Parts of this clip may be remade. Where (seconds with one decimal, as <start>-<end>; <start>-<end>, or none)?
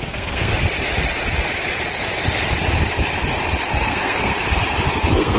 0.0-0.5; 3.7-4.3; 4.9-5.4